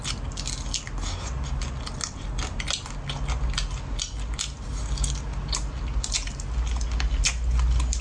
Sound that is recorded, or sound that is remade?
recorded